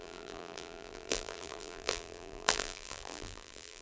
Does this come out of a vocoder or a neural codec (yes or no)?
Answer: yes